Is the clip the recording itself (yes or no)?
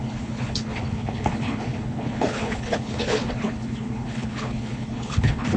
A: no